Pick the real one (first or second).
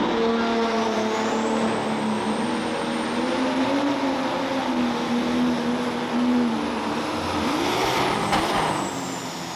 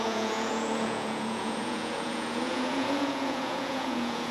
first